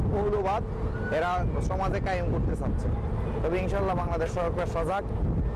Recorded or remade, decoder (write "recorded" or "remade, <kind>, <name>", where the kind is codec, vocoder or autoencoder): recorded